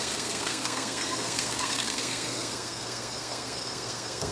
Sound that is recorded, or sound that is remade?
remade